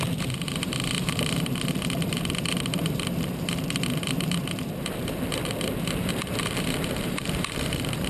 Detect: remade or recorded remade